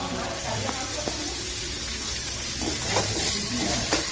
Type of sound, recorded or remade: recorded